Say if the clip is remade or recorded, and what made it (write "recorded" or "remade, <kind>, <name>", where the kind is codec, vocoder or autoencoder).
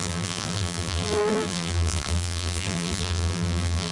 remade, vocoder, BigVGAN v2